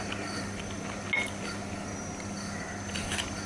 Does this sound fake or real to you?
real